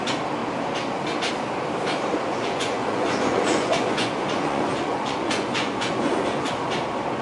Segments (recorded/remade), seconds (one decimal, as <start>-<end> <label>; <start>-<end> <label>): 0.0-2.3 recorded; 2.3-6.4 remade; 6.4-7.2 recorded